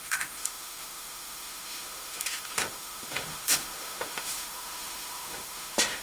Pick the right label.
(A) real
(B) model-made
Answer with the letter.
B